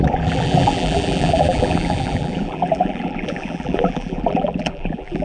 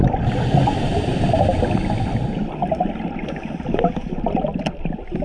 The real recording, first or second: second